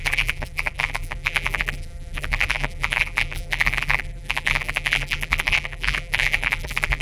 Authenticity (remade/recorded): remade